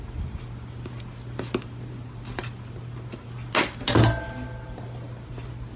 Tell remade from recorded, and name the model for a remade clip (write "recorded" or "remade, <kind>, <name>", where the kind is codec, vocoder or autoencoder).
recorded